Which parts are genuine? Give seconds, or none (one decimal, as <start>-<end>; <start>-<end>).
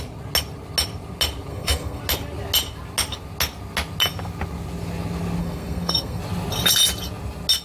0.0-1.5; 2.0-5.4; 6.2-7.6